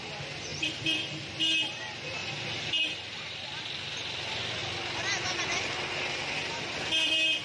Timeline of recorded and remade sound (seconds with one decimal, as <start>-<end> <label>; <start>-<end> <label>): 0.0-7.4 recorded